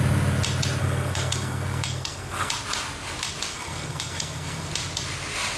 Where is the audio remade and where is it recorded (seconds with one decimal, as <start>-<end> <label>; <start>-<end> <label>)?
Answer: 0.0-0.8 recorded; 0.8-2.5 remade; 2.5-3.5 recorded; 3.5-4.7 remade; 4.7-5.6 recorded